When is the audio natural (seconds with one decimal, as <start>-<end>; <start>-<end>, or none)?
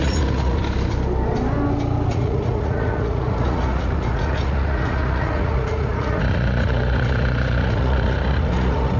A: 0.6-2.1